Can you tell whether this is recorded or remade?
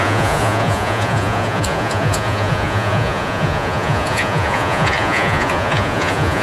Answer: remade